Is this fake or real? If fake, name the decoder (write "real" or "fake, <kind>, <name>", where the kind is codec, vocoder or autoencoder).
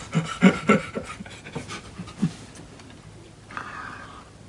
real